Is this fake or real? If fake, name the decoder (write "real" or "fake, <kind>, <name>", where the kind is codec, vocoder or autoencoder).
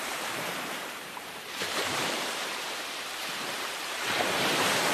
fake, vocoder, BigVGAN v2